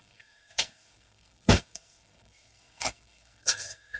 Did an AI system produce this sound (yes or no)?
yes